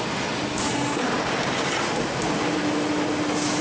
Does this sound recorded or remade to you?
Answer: recorded